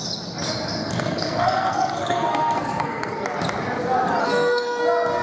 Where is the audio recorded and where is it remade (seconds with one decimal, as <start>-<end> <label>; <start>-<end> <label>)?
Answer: 0.0-0.8 recorded; 0.8-3.2 remade; 3.2-4.2 recorded; 4.2-4.8 remade; 4.8-5.2 recorded

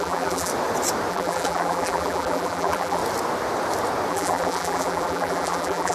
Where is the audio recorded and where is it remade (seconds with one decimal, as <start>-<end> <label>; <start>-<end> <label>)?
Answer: 0.0-0.5 remade; 0.5-1.1 recorded; 1.1-3.0 remade; 3.0-4.1 recorded; 4.1-5.9 remade

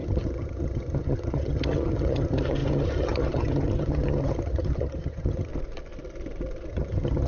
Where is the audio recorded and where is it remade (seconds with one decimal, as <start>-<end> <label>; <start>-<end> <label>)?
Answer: 0.0-5.5 remade; 5.5-6.7 recorded; 6.7-7.3 remade